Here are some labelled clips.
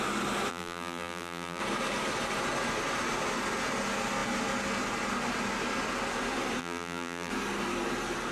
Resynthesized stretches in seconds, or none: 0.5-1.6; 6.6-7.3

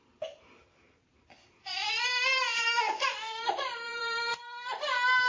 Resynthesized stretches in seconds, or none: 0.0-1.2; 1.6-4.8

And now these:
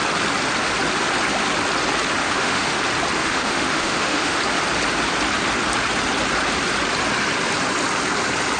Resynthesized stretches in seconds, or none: 2.2-2.8; 3.2-4.4

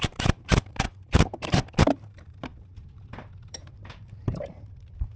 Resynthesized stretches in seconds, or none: 0.0-5.2

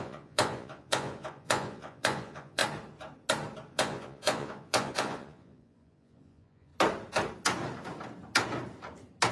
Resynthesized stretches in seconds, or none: 0.0-2.6; 3.7-6.7